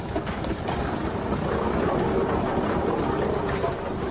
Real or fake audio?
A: real